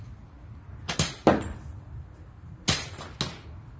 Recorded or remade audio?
recorded